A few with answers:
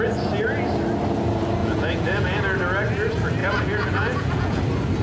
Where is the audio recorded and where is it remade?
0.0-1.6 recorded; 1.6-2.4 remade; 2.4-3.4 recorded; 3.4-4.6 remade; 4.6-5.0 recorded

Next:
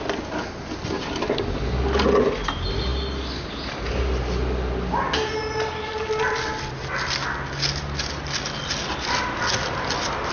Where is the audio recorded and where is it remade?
0.0-10.3 recorded

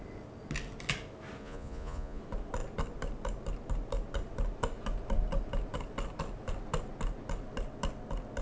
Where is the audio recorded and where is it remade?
0.0-1.4 recorded; 1.4-2.2 remade; 2.2-8.4 recorded

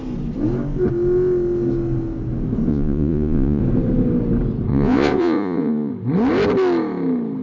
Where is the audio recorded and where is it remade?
0.0-2.7 recorded; 2.7-3.6 remade; 3.6-4.7 recorded; 4.7-5.9 remade; 5.9-7.4 recorded

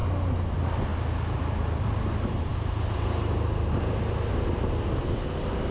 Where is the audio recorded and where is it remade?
0.0-5.7 recorded

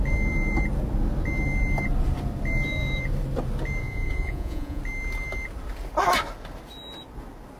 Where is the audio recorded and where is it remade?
0.0-3.8 recorded; 3.8-4.8 remade; 4.8-7.6 recorded

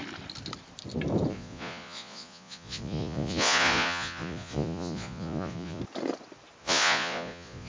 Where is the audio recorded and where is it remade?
0.0-1.3 recorded; 1.3-5.8 remade; 5.8-6.6 recorded; 6.6-7.7 remade

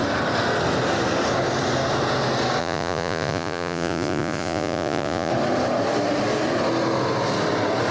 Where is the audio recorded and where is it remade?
0.0-2.6 recorded; 2.6-5.3 remade; 5.3-7.9 recorded